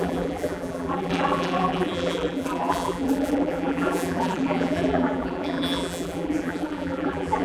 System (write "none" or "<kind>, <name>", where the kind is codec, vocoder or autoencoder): vocoder, BigVGAN v2